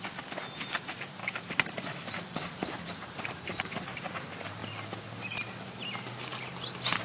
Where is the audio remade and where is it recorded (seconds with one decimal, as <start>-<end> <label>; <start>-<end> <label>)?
0.0-1.2 recorded; 1.2-4.1 remade; 4.1-7.0 recorded